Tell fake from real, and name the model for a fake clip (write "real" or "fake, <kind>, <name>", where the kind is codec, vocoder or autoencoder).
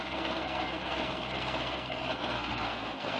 fake, codec, SNAC